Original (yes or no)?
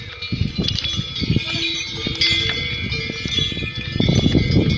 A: yes